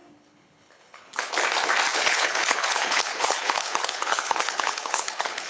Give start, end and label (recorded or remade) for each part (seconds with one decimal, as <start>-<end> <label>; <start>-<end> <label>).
0.0-1.3 remade; 1.3-1.9 recorded; 1.9-5.5 remade